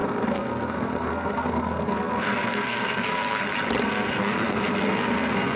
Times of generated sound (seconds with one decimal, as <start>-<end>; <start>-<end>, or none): 0.0-3.4; 3.8-5.6